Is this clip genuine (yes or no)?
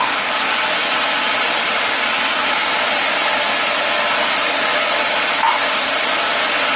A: yes